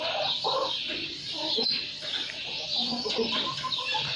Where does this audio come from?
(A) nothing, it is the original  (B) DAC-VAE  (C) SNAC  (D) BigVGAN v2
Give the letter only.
A